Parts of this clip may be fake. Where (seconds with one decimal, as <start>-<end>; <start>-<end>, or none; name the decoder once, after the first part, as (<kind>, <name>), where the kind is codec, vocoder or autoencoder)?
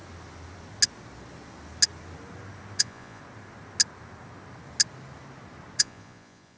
2.8-3.2 (vocoder, Vocos); 5.8-6.6